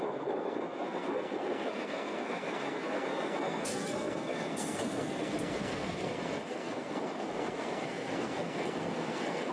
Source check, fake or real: fake